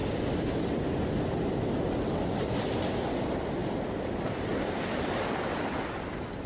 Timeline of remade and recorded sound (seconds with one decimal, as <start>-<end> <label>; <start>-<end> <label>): 0.0-3.6 recorded; 3.6-5.9 remade; 5.9-6.5 recorded